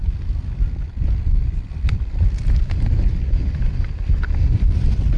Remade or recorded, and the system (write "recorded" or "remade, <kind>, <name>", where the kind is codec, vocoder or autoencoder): remade, vocoder, BigVGAN v2